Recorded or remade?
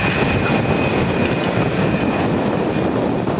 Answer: recorded